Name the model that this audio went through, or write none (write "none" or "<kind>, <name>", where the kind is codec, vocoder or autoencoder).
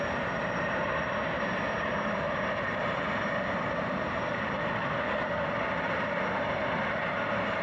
none